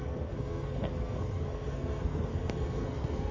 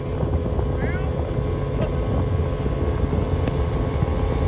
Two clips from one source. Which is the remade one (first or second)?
first